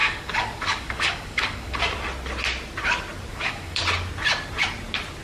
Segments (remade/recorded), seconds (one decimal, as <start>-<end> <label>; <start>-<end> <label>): 0.0-1.8 remade; 1.8-3.3 recorded; 3.3-3.8 remade; 3.8-5.2 recorded